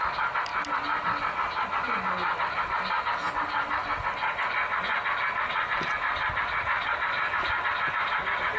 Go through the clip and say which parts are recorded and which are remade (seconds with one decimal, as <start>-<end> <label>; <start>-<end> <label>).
0.0-8.6 recorded